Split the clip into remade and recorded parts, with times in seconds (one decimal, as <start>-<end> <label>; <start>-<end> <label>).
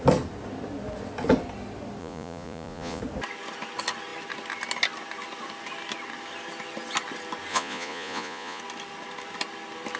0.0-2.0 recorded; 2.0-3.0 remade; 3.0-7.5 recorded; 7.5-8.6 remade; 8.6-10.0 recorded